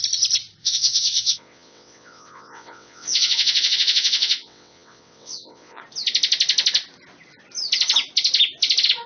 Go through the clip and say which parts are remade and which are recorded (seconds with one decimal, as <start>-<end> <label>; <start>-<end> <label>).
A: 0.0-0.6 recorded; 0.6-5.8 remade; 5.8-9.1 recorded